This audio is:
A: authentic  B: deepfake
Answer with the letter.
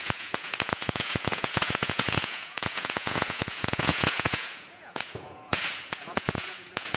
B